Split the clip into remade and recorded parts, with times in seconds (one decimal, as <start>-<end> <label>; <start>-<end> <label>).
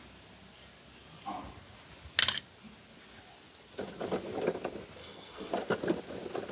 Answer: 0.0-5.0 recorded; 5.0-5.5 remade; 5.5-6.5 recorded